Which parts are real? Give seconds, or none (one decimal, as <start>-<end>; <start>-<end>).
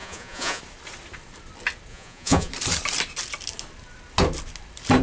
0.6-1.9; 2.5-5.0